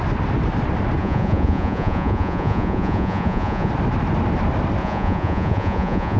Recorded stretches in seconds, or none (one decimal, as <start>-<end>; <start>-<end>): 0.0-1.0; 3.7-4.8